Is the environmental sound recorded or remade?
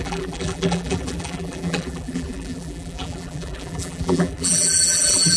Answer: remade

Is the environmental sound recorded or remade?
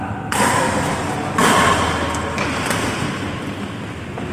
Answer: recorded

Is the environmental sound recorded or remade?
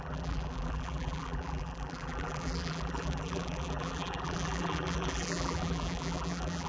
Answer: remade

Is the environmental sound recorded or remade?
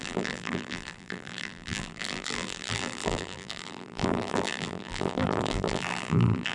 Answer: remade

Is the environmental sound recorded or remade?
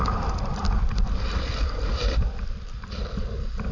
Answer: remade